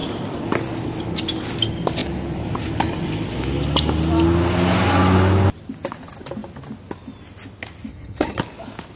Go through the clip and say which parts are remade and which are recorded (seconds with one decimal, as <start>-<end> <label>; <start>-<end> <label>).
0.0-7.9 recorded; 7.9-8.4 remade; 8.4-9.0 recorded